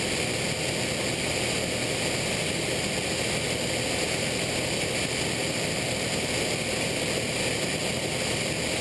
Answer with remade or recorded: recorded